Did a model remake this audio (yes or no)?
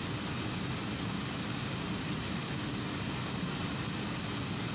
no